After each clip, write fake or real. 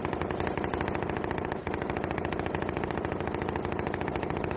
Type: real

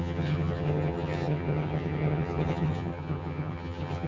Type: fake